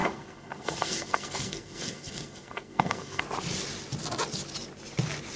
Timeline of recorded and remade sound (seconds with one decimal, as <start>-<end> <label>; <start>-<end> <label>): 0.0-3.2 remade; 3.2-5.4 recorded